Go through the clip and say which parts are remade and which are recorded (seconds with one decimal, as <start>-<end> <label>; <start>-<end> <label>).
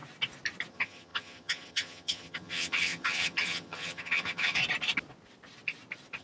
0.0-0.7 recorded; 0.7-4.6 remade; 4.6-6.2 recorded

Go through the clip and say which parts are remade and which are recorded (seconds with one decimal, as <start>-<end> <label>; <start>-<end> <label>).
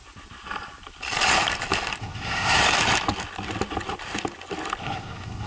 0.0-2.0 recorded; 2.0-2.6 remade; 2.6-4.8 recorded; 4.8-5.5 remade